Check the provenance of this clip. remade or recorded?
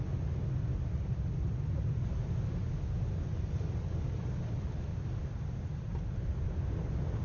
recorded